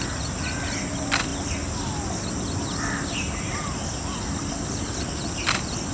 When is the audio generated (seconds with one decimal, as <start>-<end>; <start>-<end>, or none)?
none